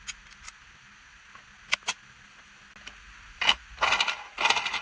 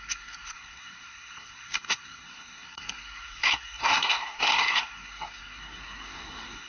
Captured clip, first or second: first